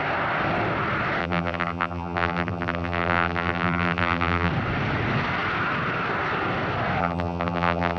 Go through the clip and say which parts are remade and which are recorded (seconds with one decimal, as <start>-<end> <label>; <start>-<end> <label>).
0.0-1.2 recorded; 1.2-4.5 remade; 4.5-7.0 recorded; 7.0-8.0 remade